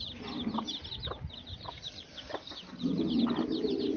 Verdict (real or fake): real